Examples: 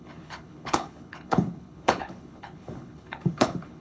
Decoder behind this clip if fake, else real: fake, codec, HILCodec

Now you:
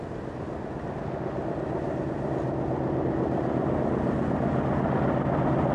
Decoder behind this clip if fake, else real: real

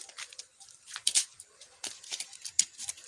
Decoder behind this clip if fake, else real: fake, vocoder, BigVGAN v2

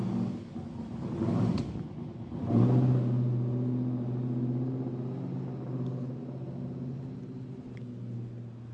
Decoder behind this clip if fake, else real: real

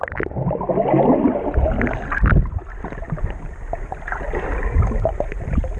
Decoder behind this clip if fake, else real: real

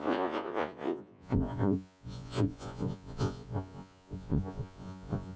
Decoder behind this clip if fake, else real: fake, vocoder, Vocos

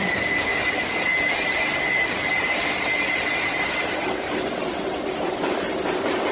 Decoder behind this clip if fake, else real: fake, vocoder, BigVGAN v2